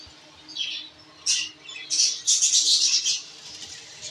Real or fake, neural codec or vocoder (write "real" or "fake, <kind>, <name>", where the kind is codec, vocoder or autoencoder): real